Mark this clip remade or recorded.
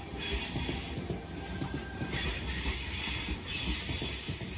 recorded